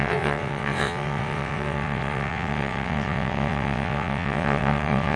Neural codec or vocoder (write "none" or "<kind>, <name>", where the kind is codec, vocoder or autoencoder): vocoder, WaveNeXt